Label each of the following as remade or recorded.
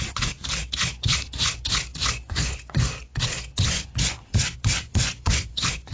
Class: remade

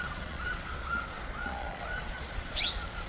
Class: remade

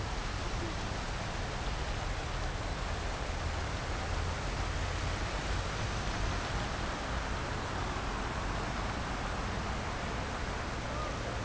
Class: recorded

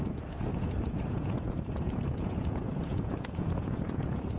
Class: remade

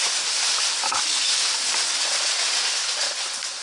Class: recorded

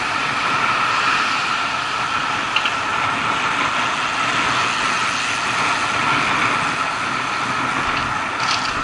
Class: recorded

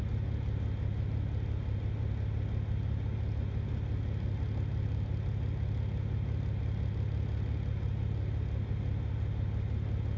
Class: recorded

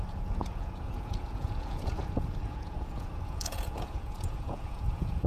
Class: remade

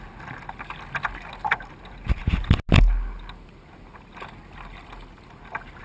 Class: recorded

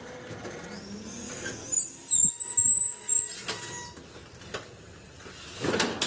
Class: recorded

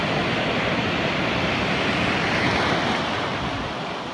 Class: recorded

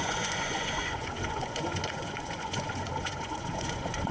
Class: remade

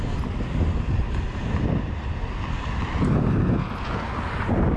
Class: recorded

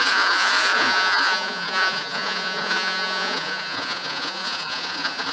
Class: remade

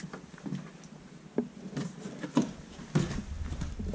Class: recorded